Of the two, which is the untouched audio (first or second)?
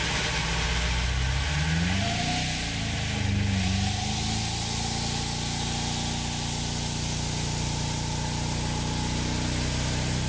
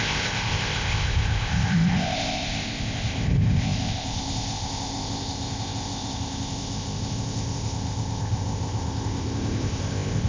first